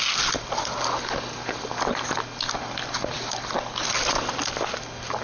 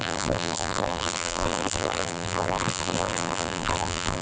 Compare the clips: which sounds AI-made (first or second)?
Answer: second